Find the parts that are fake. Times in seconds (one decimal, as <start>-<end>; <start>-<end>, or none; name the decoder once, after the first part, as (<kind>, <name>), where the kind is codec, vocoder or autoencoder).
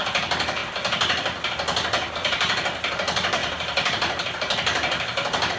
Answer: 0.0-0.6 (vocoder, BigVGAN v2); 2.1-5.6